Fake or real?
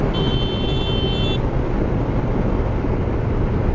real